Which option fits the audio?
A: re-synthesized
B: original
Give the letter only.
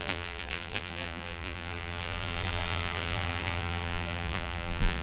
A